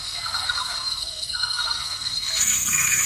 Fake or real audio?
fake